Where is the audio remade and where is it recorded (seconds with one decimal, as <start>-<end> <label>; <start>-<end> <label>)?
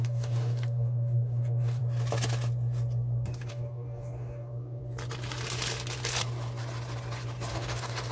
0.0-1.8 remade; 1.8-3.5 recorded; 3.5-4.8 remade; 4.8-7.5 recorded; 7.5-8.1 remade